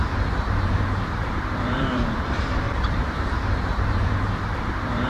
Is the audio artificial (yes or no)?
yes